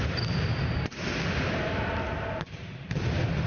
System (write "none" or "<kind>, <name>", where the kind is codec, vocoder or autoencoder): none